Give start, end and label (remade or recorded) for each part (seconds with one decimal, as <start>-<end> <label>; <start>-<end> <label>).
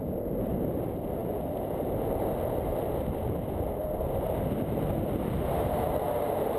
0.0-6.6 recorded